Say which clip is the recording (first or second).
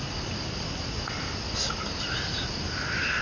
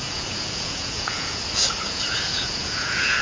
first